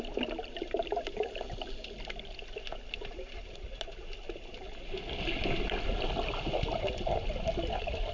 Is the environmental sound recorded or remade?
recorded